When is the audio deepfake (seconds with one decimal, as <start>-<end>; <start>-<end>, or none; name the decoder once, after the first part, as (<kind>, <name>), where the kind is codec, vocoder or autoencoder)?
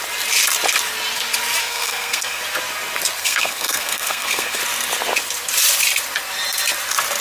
1.6-2.4 (codec, SNAC); 3.2-4.6